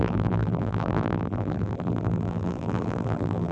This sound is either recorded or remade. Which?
remade